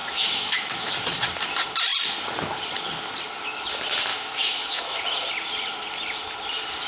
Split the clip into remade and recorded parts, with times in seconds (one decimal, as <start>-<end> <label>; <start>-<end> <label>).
0.0-0.9 remade; 0.9-4.1 recorded; 4.1-5.0 remade; 5.0-6.9 recorded